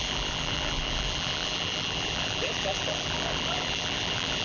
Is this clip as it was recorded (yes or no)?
no